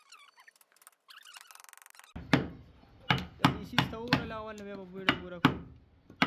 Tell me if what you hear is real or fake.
real